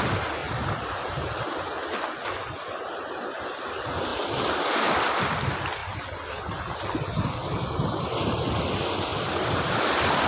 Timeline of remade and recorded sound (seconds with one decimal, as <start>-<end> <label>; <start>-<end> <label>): 0.0-0.4 recorded; 0.4-1.1 remade; 1.1-4.1 recorded; 4.1-5.2 remade; 5.2-5.8 recorded; 5.8-8.6 remade; 8.6-9.1 recorded; 9.1-9.7 remade; 9.7-10.3 recorded